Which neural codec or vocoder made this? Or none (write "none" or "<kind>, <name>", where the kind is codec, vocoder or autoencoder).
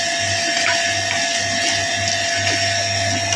none